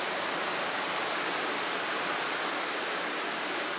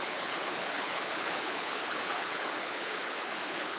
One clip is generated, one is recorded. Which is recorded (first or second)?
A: first